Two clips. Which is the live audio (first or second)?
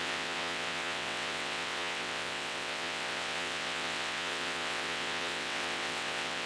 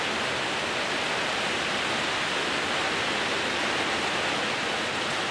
second